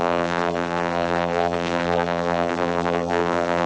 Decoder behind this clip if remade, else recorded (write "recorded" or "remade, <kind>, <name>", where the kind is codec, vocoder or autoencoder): remade, vocoder, BigVGAN v2